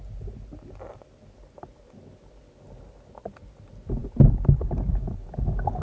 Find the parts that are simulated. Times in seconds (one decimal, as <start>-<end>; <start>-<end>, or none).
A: 4.0-5.8